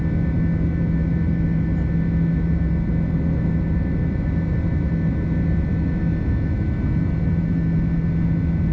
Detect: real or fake real